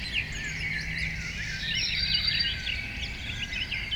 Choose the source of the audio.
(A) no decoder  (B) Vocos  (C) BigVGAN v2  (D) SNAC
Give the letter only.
A